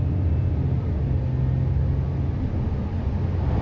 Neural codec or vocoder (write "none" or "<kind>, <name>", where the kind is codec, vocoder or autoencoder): none